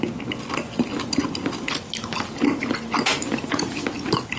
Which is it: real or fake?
real